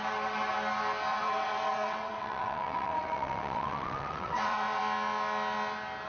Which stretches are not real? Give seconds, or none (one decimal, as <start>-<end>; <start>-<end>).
1.1-4.8